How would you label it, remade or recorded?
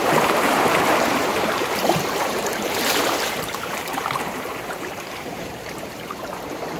remade